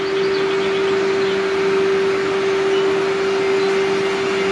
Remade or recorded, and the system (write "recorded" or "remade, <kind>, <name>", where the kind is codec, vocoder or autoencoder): recorded